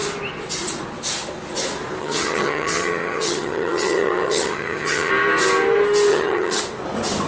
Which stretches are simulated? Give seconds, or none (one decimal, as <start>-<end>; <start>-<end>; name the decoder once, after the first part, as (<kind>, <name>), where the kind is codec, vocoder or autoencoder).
2.0-5.1 (vocoder, HiFi-GAN); 6.1-6.6